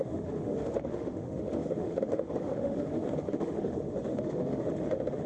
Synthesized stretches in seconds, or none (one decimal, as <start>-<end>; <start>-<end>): 0.0-5.3